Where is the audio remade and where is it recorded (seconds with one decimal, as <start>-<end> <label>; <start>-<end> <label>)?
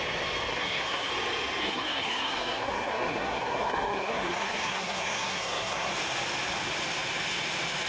0.0-0.5 recorded; 0.5-1.1 remade; 1.1-1.6 recorded; 1.6-5.9 remade; 5.9-7.9 recorded